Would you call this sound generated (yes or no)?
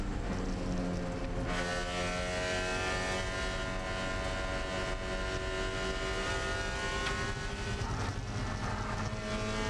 no